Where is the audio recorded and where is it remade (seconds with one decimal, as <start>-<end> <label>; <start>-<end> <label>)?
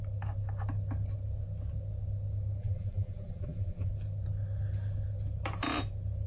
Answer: 0.0-2.6 recorded; 2.6-3.9 remade; 3.9-6.3 recorded